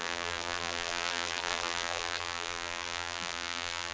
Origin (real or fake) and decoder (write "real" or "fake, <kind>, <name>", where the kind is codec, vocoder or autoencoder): fake, vocoder, BigVGAN v2